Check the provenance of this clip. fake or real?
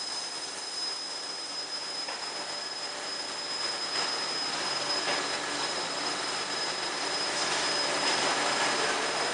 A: real